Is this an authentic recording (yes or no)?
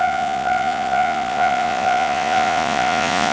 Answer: no